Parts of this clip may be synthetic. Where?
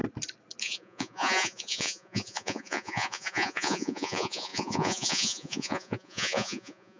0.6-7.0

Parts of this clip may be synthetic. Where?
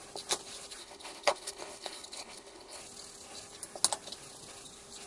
0.8-2.8